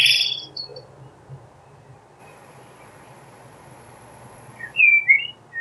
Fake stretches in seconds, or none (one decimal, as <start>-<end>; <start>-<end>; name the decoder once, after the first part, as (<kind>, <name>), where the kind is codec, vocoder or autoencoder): 2.2-4.8 (vocoder, Vocos)